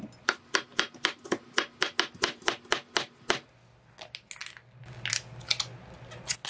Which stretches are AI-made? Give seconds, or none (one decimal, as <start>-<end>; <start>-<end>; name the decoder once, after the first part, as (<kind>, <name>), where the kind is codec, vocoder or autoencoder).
none